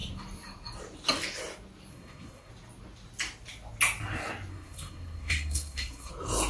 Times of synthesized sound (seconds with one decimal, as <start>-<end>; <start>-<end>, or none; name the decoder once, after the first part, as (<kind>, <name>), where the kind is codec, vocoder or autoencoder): 1.9-2.5 (codec, SNAC); 4.5-6.1